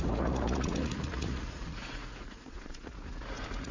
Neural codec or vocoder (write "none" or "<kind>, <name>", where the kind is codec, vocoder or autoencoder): vocoder, Vocos